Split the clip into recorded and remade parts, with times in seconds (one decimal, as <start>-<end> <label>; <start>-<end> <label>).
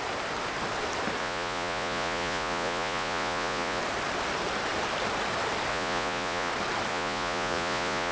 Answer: 0.0-1.2 recorded; 1.2-3.8 remade; 3.8-5.7 recorded; 5.7-6.5 remade; 6.5-6.9 recorded; 6.9-8.1 remade